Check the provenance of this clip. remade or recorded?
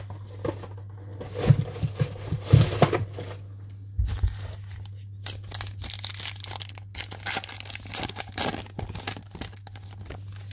recorded